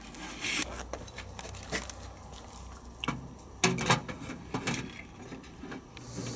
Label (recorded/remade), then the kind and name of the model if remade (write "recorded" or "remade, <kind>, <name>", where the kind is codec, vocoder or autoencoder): recorded